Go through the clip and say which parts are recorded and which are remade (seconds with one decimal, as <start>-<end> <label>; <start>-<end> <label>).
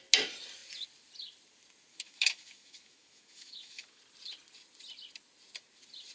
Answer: 0.0-1.9 recorded; 1.9-4.0 remade; 4.0-6.1 recorded